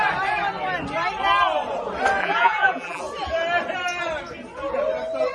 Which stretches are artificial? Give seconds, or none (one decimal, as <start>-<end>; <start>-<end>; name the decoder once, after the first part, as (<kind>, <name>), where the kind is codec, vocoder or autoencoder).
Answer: 2.2-3.0 (vocoder, BigVGAN v2)